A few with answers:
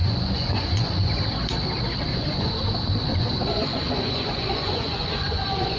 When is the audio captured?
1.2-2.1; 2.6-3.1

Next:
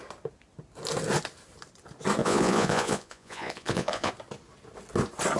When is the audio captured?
0.0-2.2; 4.1-5.4

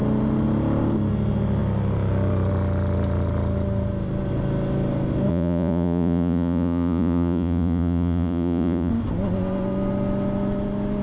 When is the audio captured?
0.0-5.3; 8.9-11.0